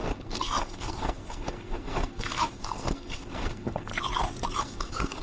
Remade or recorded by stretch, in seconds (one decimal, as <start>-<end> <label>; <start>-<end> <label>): 0.0-3.9 remade; 3.9-4.6 recorded; 4.6-5.2 remade